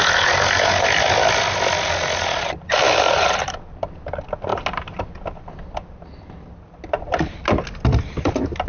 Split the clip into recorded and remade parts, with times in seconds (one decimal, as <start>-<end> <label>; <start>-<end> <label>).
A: 0.0-4.5 recorded; 4.5-5.0 remade; 5.0-8.7 recorded